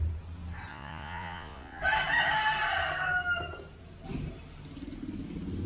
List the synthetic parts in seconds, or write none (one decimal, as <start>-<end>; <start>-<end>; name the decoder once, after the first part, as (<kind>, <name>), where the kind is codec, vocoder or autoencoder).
0.7-1.8 (vocoder, Vocos)